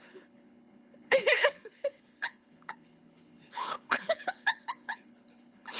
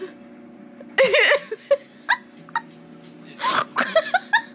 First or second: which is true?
second